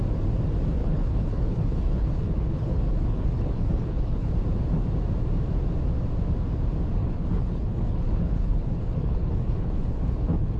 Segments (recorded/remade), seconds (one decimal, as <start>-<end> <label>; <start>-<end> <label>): 0.0-0.8 recorded; 0.8-4.3 remade; 4.3-7.0 recorded; 7.0-10.6 remade